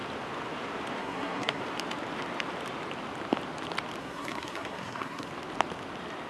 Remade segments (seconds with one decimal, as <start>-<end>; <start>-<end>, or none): 1.0-1.6; 4.0-5.3